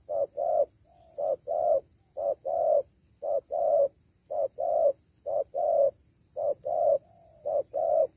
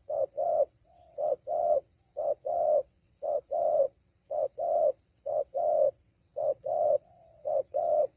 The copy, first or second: second